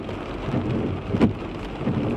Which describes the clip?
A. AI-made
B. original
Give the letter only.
B